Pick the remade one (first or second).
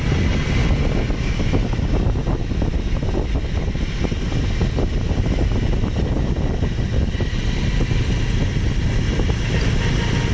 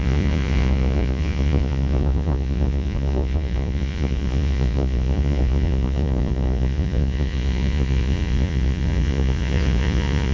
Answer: second